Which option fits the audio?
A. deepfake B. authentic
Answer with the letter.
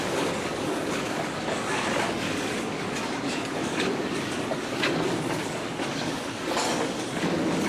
A